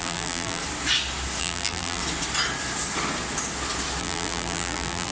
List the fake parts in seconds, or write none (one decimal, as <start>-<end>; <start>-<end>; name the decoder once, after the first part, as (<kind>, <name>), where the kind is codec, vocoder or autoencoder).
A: 0.0-0.6 (vocoder, BigVGAN v2); 1.4-2.0; 4.0-5.1